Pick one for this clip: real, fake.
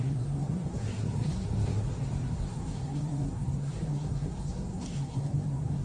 fake